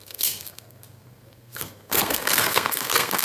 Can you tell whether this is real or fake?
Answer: fake